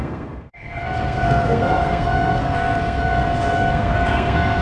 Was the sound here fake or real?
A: fake